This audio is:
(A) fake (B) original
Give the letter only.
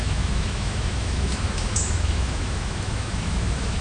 A